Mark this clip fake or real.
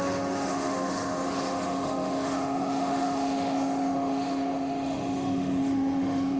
fake